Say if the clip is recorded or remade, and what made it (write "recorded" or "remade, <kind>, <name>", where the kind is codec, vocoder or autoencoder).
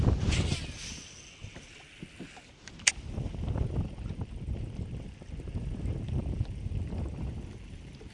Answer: recorded